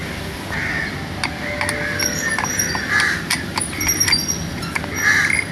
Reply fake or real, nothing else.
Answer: real